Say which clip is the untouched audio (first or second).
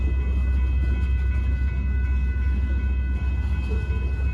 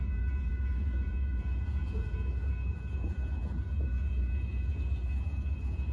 first